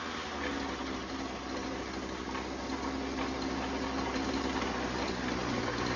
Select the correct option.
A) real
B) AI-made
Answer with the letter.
A